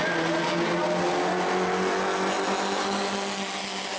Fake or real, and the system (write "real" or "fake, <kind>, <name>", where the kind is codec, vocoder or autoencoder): real